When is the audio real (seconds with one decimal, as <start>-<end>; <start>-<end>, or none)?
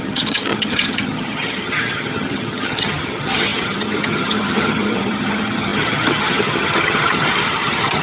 none